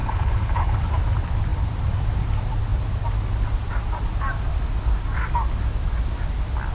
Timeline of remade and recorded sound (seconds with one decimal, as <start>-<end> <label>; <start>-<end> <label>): 0.0-0.9 remade; 0.9-6.7 recorded